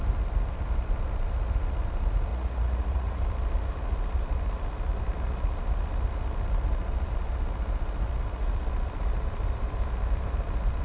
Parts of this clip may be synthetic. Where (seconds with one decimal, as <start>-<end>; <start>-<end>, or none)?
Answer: 2.3-3.2